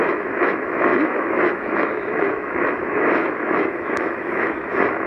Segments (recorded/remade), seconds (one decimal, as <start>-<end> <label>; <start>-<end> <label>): 0.0-5.1 remade